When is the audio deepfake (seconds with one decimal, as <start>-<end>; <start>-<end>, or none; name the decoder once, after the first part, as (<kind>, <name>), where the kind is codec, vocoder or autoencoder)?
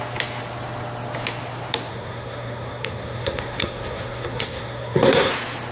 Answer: 1.9-5.3 (codec, SNAC)